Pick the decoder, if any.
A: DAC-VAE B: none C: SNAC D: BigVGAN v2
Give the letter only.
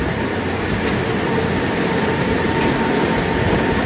B